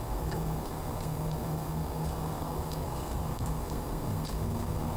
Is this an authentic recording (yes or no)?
no